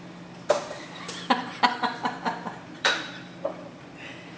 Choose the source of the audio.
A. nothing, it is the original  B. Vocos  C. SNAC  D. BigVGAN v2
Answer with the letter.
D